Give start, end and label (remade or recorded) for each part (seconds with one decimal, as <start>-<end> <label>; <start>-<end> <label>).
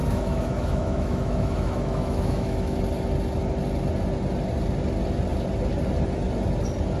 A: 0.0-2.8 remade; 2.8-7.0 recorded